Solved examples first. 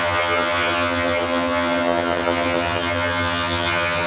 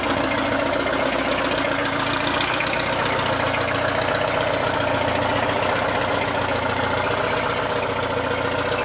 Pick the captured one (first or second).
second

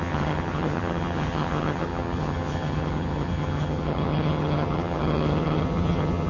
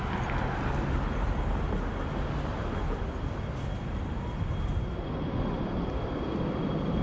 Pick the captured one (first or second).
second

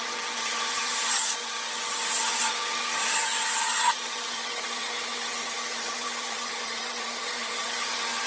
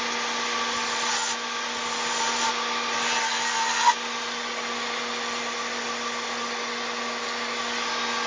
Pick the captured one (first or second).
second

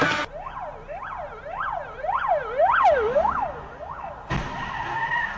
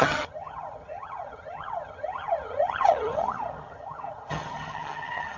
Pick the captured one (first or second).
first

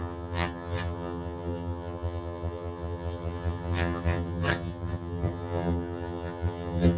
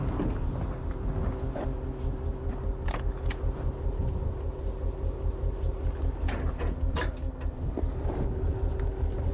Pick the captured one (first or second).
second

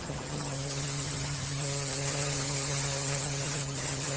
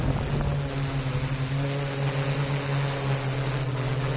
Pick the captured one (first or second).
second